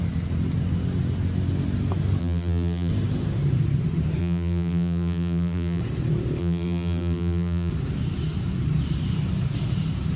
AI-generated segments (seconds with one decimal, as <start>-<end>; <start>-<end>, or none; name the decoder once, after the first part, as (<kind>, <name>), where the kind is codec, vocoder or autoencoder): 2.2-2.9 (vocoder, BigVGAN v2); 4.2-5.8; 6.4-7.7